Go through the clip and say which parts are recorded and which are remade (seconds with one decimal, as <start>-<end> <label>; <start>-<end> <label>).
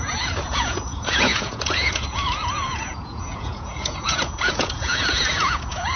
0.0-6.0 remade